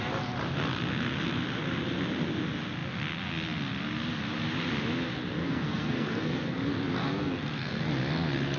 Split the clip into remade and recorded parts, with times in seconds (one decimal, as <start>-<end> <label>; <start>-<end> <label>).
0.0-5.4 recorded; 5.4-6.6 remade; 6.6-7.0 recorded; 7.0-7.8 remade; 7.8-8.6 recorded